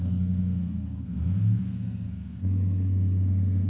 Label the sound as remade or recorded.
remade